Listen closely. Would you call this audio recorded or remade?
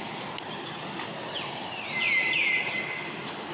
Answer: recorded